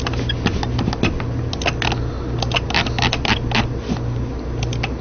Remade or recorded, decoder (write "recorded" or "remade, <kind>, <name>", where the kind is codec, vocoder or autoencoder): recorded